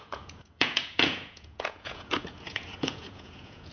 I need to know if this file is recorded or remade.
remade